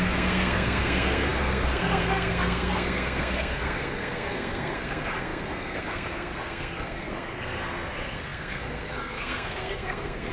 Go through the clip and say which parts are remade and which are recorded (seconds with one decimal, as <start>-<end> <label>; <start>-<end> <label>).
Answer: 0.0-10.3 remade